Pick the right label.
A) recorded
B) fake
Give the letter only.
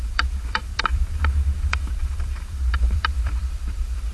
B